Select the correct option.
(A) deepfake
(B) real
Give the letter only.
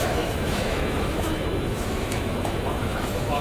A